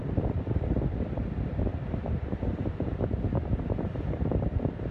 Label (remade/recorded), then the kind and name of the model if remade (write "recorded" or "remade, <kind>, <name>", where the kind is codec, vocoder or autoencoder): recorded